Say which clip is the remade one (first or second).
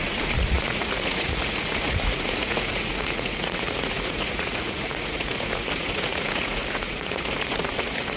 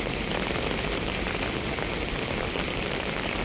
first